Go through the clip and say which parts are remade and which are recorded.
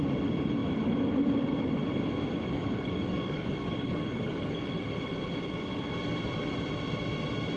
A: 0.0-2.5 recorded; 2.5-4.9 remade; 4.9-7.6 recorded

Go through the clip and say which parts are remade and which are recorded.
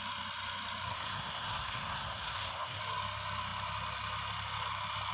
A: 0.0-0.9 recorded; 0.9-2.8 remade; 2.8-5.1 recorded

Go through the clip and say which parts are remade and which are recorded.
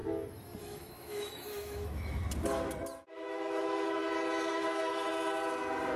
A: 0.0-0.6 recorded; 0.6-2.2 remade; 2.2-3.1 recorded; 3.1-4.0 remade; 4.0-4.5 recorded; 4.5-5.1 remade; 5.1-6.0 recorded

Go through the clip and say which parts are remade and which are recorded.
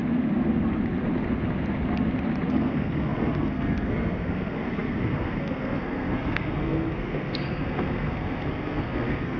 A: 0.0-2.5 recorded; 2.5-9.4 remade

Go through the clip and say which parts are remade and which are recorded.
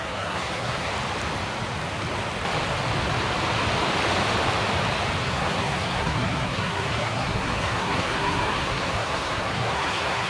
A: 0.0-0.9 remade; 0.9-5.2 recorded; 5.2-10.3 remade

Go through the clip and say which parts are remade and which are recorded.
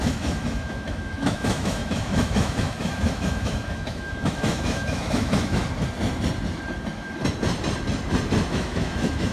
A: 0.0-5.6 remade; 5.6-8.5 recorded; 8.5-9.3 remade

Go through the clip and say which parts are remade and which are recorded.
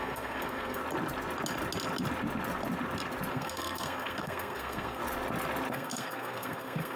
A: 0.0-0.8 remade; 0.8-3.3 recorded; 3.3-5.0 remade; 5.0-5.7 recorded; 5.7-7.0 remade